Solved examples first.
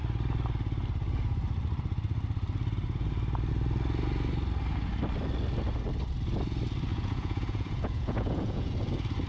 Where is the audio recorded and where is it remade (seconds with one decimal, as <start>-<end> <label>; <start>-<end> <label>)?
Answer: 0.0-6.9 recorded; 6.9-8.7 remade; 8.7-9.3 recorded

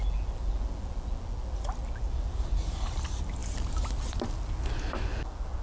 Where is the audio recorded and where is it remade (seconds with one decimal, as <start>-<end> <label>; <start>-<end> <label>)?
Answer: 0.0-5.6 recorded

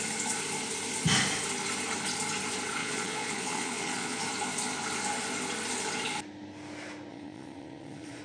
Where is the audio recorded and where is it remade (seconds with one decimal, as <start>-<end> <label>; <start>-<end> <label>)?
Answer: 0.0-2.8 recorded; 2.8-4.2 remade; 4.2-7.1 recorded; 7.1-8.2 remade

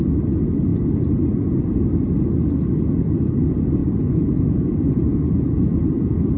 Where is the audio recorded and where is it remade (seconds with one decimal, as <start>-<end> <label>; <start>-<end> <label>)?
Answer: 0.0-3.8 recorded; 3.8-6.4 remade

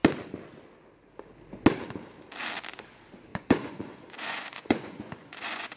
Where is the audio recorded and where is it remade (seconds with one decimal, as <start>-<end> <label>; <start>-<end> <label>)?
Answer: 0.0-3.3 recorded; 3.3-5.8 remade

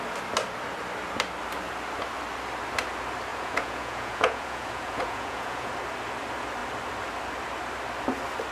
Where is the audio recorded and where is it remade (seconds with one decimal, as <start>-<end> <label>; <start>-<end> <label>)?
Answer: 0.0-3.3 recorded; 3.3-5.7 remade; 5.7-8.5 recorded

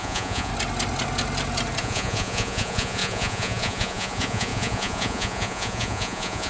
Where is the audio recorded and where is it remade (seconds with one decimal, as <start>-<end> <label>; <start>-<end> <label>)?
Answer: 0.0-0.5 remade; 0.5-1.8 recorded; 1.8-6.5 remade